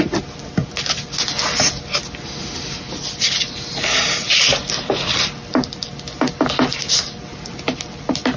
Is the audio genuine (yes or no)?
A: yes